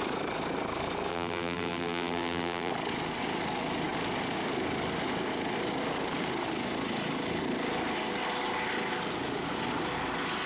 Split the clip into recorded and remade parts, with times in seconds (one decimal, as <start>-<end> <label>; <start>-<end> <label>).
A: 0.0-1.1 recorded; 1.1-2.7 remade; 2.7-10.5 recorded